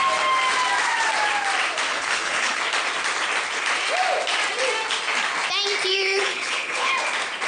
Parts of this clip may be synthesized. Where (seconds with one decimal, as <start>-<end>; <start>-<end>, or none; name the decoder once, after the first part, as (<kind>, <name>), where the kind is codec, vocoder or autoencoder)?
1.9-2.6 (codec, HILCodec); 5.9-6.9